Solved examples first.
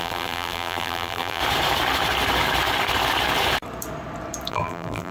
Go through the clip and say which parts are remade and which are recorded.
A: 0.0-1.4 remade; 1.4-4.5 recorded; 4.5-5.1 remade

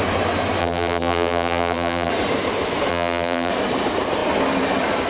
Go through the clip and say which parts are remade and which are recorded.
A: 0.0-0.6 recorded; 0.6-2.1 remade; 2.1-2.9 recorded; 2.9-3.5 remade; 3.5-5.1 recorded

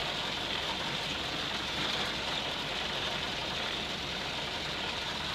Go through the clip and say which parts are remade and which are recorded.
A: 0.0-5.3 remade